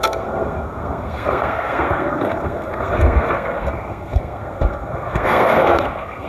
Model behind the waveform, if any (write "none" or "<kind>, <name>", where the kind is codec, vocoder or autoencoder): codec, SNAC